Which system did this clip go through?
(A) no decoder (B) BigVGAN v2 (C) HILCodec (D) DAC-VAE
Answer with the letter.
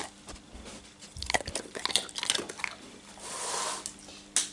A